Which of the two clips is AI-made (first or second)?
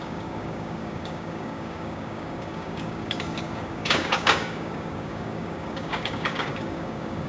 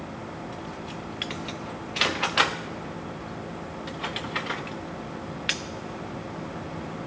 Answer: first